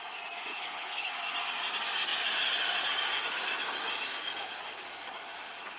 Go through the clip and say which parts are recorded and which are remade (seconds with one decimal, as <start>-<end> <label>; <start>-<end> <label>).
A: 0.0-0.5 recorded; 0.5-1.1 remade; 1.1-5.8 recorded